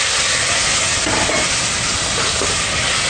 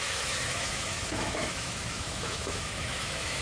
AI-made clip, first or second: second